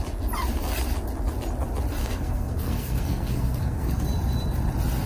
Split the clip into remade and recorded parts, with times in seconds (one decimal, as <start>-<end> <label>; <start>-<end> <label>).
0.0-2.0 recorded; 2.0-4.0 remade; 4.0-5.1 recorded